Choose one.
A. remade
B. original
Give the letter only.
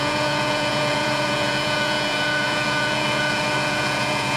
A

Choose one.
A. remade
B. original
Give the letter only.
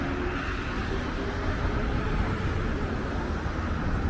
B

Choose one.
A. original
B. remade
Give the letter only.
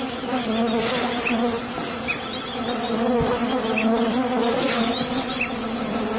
A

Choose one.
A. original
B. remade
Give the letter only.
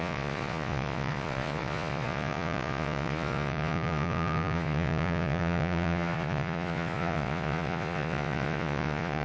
B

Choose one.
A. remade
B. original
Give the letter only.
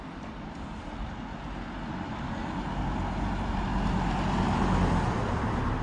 B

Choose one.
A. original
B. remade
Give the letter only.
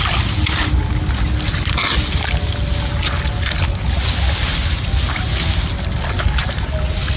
A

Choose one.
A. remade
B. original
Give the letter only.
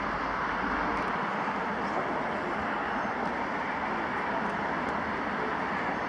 B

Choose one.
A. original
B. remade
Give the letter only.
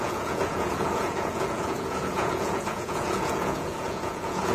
B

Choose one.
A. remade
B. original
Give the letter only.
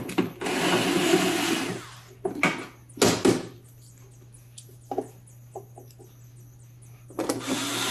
B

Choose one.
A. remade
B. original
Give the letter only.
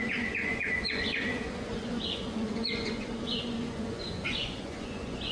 A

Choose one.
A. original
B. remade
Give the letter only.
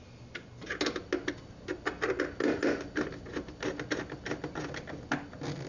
A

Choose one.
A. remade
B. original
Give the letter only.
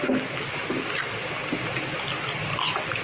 B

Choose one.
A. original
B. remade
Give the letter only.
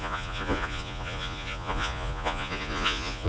B